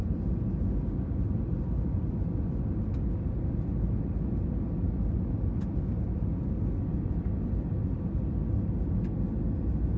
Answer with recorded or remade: recorded